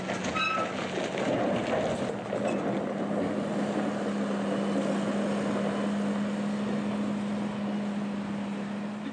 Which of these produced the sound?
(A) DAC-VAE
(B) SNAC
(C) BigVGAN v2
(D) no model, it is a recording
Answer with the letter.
D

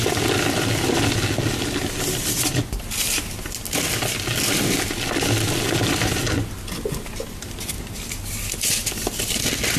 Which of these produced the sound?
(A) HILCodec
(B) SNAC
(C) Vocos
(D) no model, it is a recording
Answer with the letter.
D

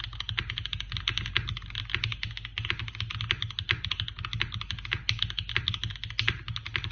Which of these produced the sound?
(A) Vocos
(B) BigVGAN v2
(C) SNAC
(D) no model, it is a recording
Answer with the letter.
D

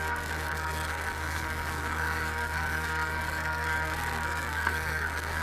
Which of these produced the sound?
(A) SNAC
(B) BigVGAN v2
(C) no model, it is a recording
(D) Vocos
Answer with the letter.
A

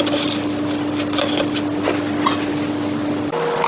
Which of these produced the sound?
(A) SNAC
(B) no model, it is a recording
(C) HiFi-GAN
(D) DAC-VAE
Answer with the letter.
B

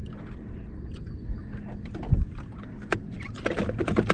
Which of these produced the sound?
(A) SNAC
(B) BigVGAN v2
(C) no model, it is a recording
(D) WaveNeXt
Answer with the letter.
C